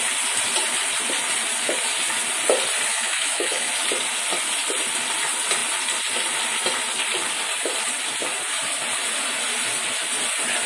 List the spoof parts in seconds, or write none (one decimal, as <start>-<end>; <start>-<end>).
2.9-3.7